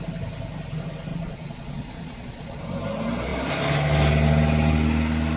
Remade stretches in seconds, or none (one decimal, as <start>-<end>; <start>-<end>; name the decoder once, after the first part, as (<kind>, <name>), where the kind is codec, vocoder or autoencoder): 1.1-2.6 (vocoder, Vocos)